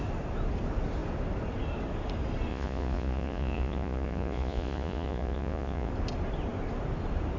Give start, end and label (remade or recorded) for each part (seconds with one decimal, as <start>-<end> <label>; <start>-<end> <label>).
0.0-2.5 recorded; 2.5-5.9 remade; 5.9-7.4 recorded